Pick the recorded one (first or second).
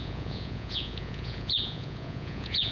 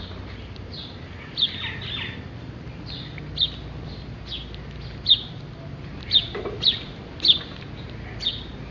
second